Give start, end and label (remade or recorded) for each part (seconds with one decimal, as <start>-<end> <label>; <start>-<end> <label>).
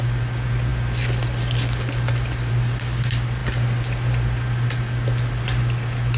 0.0-6.2 recorded